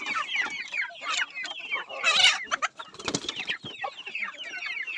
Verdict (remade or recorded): recorded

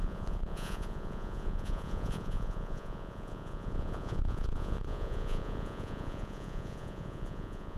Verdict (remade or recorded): remade